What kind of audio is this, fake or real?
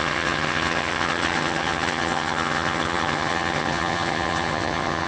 fake